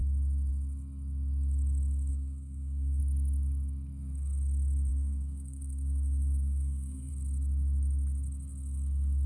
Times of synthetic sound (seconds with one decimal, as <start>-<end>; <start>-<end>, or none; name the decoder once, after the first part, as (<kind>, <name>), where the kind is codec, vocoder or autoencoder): 2.1-3.0 (codec, SNAC); 4.9-7.1